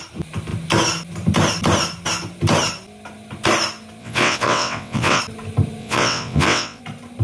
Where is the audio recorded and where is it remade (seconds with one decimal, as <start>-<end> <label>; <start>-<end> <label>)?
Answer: 0.0-4.0 recorded; 4.0-5.2 remade; 5.2-5.8 recorded; 5.8-6.8 remade; 6.8-7.2 recorded